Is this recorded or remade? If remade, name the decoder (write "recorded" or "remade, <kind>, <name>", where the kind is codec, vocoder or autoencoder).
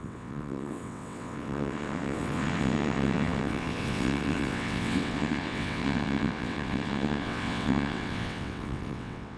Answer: remade, vocoder, WaveNeXt